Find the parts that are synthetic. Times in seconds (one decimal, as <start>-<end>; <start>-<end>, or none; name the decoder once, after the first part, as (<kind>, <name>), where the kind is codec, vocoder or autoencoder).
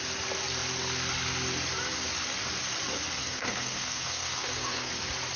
3.2-4.9 (codec, SNAC)